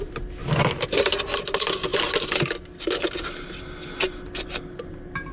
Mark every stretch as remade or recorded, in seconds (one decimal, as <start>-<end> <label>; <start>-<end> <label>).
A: 0.0-1.9 remade; 1.9-5.3 recorded